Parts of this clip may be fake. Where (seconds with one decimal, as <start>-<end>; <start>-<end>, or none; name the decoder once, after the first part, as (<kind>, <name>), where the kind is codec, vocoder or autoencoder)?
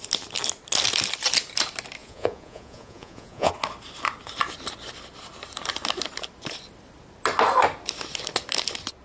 2.0-3.5 (vocoder, Vocos)